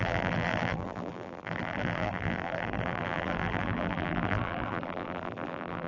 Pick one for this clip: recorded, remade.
remade